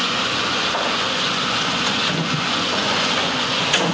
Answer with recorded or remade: remade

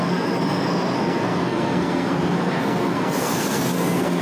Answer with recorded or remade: remade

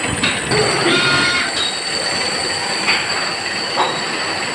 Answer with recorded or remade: recorded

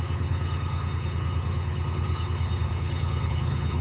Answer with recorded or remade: remade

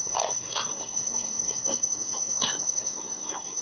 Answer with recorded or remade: remade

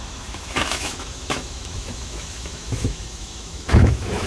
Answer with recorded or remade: remade